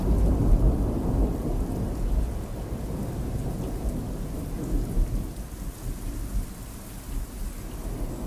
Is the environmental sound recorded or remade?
recorded